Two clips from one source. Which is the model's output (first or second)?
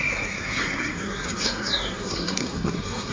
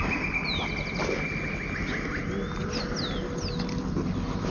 first